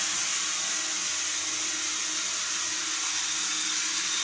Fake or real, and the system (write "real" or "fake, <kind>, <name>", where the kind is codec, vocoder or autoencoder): real